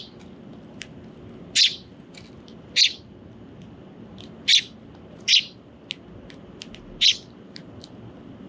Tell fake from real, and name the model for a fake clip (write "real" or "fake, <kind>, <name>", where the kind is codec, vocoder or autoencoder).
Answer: real